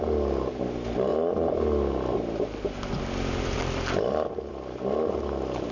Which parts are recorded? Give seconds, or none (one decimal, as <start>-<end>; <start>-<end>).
0.0-5.7